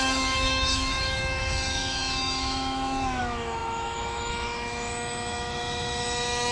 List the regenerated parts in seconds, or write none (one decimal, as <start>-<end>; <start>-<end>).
0.0-6.5